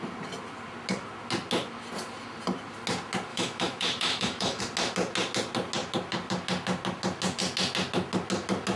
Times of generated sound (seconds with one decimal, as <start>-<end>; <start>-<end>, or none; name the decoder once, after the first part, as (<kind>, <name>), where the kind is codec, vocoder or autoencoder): 3.3-4.6 (autoencoder, DAC-VAE)